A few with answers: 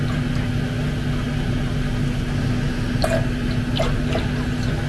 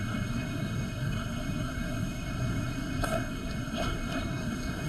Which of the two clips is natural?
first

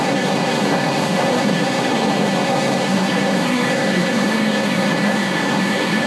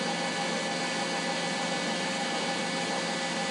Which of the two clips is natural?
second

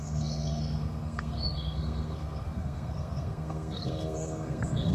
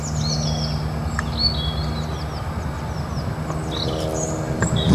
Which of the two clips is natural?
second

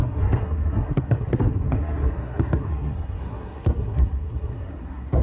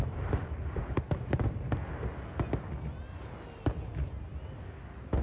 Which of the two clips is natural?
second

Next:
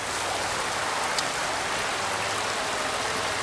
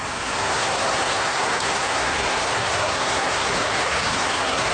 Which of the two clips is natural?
first